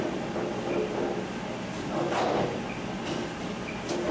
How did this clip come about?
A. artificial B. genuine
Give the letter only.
B